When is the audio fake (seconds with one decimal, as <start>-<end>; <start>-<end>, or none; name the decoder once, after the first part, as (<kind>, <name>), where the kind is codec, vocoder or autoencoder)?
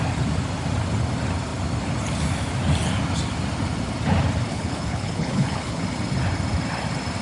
4.5-5.8 (codec, HILCodec)